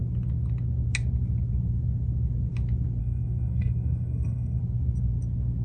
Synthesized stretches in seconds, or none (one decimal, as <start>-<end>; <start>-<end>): 3.0-4.6